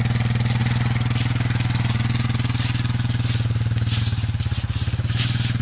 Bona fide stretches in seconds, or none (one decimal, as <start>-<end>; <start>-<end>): 0.0-5.6